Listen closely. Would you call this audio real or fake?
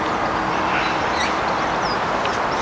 real